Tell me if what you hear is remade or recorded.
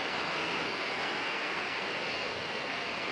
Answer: remade